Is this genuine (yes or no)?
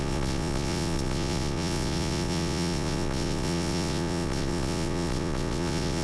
no